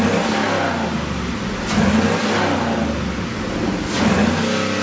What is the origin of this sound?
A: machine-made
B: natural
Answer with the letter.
B